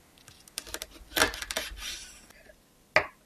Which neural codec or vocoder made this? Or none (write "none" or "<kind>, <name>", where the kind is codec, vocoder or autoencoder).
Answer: none